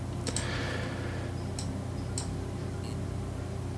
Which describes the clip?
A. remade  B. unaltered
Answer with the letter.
B